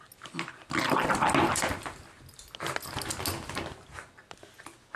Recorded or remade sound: recorded